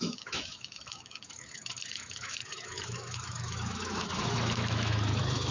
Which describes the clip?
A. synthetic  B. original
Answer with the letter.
A